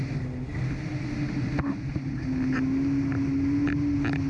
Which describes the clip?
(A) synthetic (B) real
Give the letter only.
B